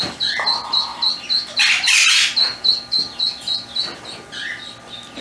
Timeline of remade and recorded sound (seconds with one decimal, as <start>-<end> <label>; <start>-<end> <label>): 0.0-5.2 recorded